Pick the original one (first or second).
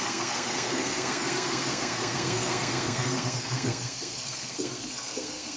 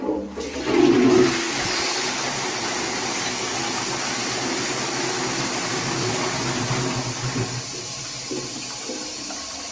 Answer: second